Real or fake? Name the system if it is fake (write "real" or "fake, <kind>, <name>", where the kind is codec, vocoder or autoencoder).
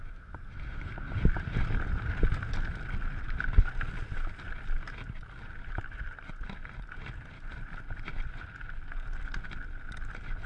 real